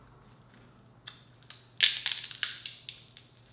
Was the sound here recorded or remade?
recorded